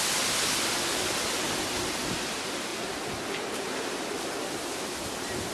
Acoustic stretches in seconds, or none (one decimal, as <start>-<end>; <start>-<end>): 0.0-5.5